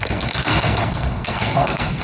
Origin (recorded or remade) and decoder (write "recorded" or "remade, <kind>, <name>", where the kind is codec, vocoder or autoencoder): remade, codec, SNAC